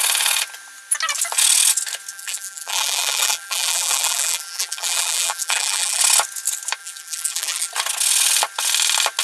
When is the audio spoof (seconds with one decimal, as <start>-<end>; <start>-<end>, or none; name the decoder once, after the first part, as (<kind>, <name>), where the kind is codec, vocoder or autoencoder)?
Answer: 2.1-6.0 (vocoder, BigVGAN v2); 6.8-7.7